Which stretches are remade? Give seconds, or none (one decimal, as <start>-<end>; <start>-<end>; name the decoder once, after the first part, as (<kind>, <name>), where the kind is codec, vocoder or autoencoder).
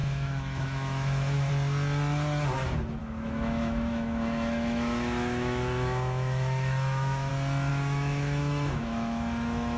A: 0.0-1.5 (autoencoder, DAC-VAE); 3.0-7.3; 7.7-9.8